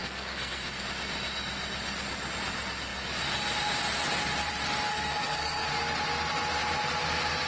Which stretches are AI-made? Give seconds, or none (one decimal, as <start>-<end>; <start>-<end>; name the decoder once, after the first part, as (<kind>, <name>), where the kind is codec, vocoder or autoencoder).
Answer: 0.0-0.8 (codec, SNAC); 4.9-5.7